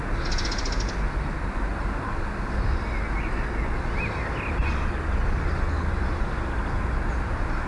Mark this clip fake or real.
real